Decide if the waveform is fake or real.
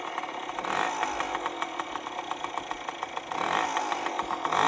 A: real